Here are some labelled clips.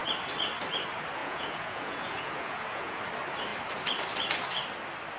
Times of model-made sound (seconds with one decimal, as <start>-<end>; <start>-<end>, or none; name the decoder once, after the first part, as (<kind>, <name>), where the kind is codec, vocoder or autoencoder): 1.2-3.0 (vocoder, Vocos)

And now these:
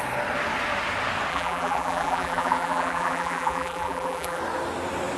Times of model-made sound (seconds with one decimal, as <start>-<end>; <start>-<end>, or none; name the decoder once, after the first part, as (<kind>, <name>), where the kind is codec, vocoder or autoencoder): 1.3-4.4 (vocoder, BigVGAN v2)

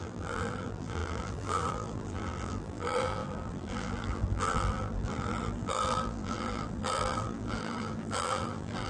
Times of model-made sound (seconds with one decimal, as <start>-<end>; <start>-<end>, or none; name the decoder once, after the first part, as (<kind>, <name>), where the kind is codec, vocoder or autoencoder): 0.0-8.9 (vocoder, BigVGAN v2)